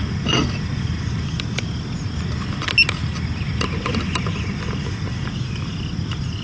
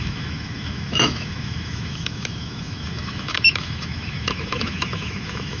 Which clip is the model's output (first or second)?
second